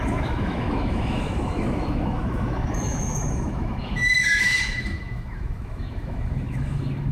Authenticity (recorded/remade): remade